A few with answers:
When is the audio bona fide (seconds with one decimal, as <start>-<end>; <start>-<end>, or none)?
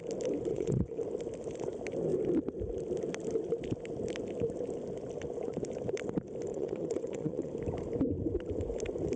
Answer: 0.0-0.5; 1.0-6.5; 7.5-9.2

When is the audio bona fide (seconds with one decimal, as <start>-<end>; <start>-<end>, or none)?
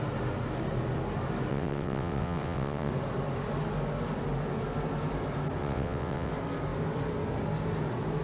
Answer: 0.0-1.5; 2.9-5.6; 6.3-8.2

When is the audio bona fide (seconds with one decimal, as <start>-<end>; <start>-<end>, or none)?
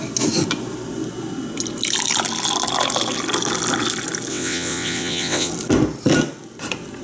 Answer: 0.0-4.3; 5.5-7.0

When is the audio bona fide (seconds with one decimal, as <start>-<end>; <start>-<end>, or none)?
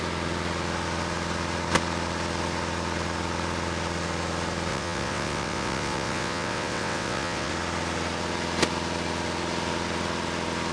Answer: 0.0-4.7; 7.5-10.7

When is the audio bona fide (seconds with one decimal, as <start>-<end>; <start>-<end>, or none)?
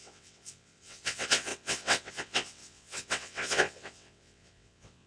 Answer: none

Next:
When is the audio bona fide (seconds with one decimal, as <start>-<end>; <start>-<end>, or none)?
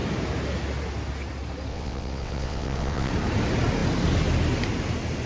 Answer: 0.0-1.7; 3.1-5.3